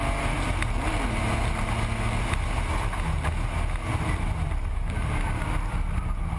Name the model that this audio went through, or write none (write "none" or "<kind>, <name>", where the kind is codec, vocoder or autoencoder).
none